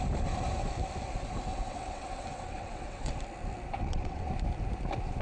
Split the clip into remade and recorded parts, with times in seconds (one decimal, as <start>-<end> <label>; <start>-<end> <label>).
0.0-1.5 recorded; 1.5-3.1 remade; 3.1-3.8 recorded; 3.8-4.3 remade; 4.3-5.2 recorded